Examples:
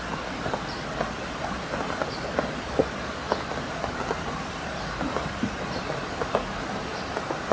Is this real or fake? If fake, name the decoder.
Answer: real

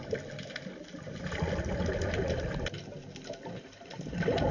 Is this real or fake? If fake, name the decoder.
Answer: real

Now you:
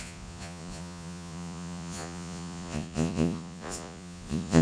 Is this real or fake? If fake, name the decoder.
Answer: fake, vocoder, Vocos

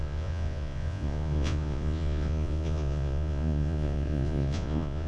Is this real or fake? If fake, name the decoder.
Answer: fake, vocoder, Vocos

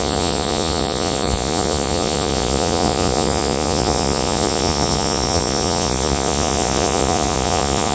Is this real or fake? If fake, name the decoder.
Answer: fake, vocoder, Vocos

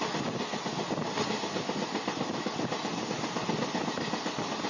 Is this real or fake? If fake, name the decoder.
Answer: real